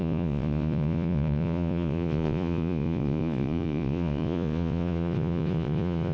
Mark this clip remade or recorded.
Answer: remade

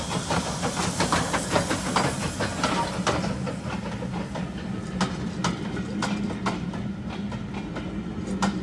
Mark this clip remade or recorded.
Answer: recorded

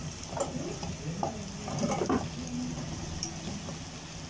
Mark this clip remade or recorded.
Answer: recorded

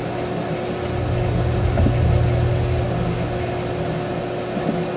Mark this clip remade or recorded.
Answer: recorded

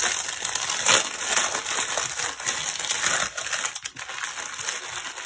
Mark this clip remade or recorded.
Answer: recorded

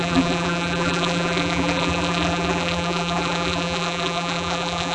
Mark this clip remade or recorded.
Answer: remade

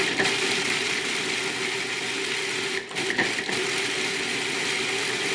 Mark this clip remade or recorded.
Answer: recorded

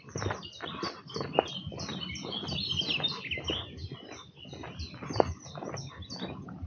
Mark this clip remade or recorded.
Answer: recorded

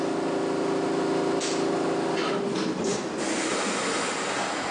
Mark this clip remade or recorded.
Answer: recorded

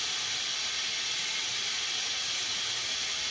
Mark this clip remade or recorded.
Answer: recorded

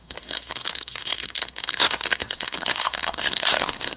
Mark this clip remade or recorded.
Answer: remade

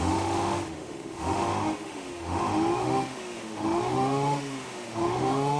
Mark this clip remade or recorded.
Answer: remade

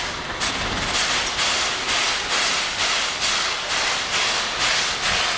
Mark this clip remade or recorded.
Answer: recorded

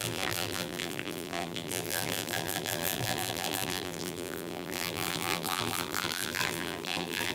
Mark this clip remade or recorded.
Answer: remade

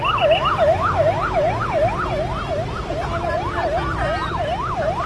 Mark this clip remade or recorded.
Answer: recorded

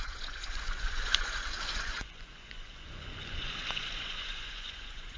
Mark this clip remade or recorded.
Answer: remade